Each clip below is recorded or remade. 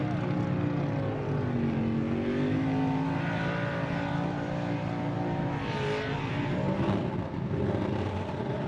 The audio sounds recorded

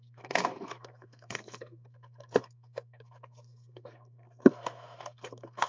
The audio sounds remade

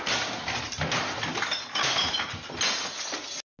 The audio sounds recorded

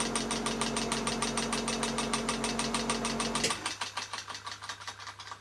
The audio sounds recorded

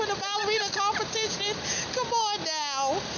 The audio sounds recorded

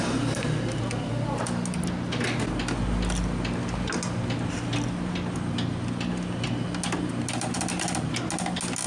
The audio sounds recorded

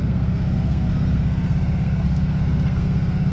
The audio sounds remade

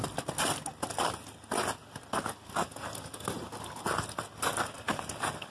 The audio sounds recorded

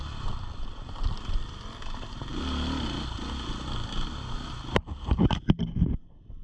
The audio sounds recorded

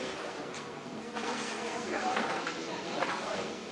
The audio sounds remade